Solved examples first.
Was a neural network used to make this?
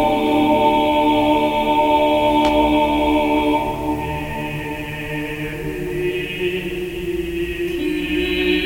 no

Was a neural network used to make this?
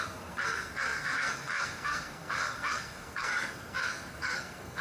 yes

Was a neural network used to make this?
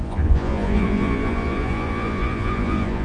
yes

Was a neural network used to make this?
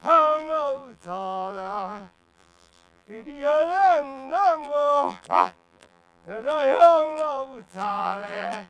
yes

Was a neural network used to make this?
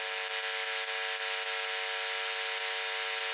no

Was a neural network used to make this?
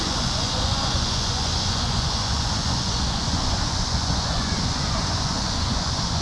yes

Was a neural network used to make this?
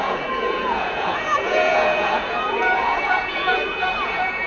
yes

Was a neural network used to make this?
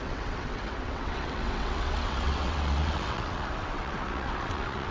yes